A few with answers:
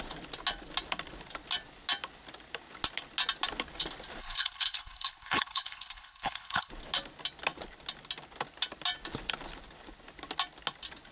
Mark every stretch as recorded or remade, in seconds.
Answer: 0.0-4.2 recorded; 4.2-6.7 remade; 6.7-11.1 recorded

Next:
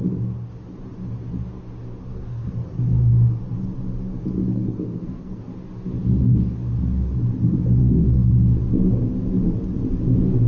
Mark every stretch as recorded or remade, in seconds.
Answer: 0.0-2.1 recorded; 2.1-3.1 remade; 3.1-4.5 recorded; 4.5-5.4 remade; 5.4-7.8 recorded; 7.8-8.3 remade; 8.3-10.5 recorded

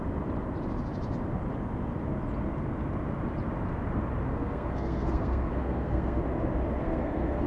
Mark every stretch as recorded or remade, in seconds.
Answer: 0.0-4.3 recorded; 4.3-6.2 remade; 6.2-6.8 recorded; 6.8-7.5 remade